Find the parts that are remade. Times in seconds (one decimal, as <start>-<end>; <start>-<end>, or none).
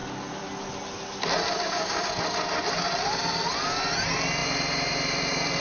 4.4-5.6